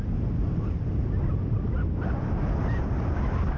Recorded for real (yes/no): yes